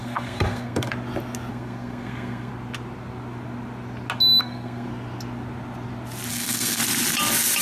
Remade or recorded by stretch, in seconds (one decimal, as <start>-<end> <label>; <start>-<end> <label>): 0.0-0.9 remade; 0.9-1.5 recorded; 1.5-2.5 remade; 2.5-4.4 recorded; 4.4-4.9 remade; 4.9-6.3 recorded; 6.3-6.8 remade; 6.8-7.6 recorded